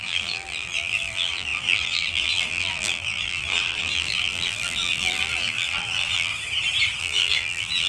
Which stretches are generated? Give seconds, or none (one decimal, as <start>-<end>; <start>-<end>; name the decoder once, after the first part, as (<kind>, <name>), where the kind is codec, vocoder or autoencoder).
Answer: 0.0-6.3 (vocoder, BigVGAN v2); 7.0-7.9